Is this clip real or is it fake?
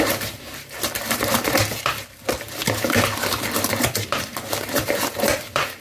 fake